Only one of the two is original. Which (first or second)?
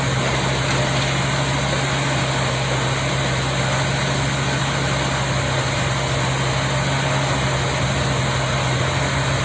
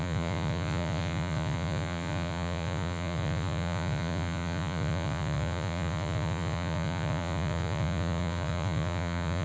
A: first